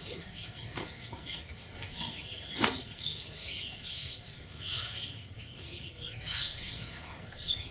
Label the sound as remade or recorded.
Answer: remade